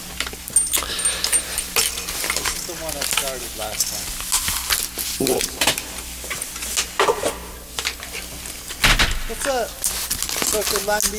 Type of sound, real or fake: real